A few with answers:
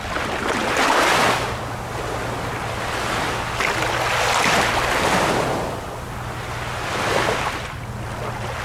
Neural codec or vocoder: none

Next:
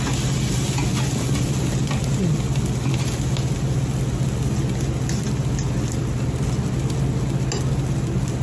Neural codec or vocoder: none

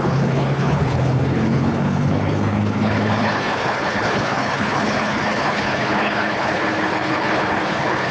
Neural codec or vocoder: codec, HILCodec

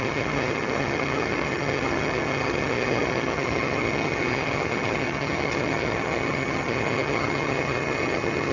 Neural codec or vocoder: vocoder, HiFi-GAN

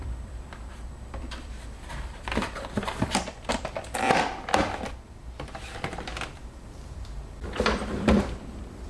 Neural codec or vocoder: vocoder, BigVGAN v2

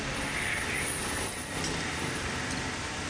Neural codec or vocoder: none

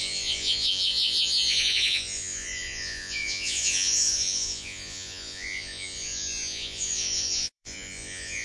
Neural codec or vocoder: vocoder, Vocos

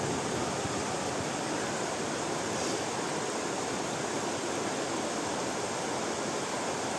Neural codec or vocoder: vocoder, BigVGAN v2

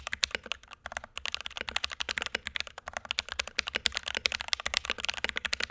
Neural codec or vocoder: none